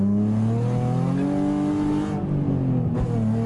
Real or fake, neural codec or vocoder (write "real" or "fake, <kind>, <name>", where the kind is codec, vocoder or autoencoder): real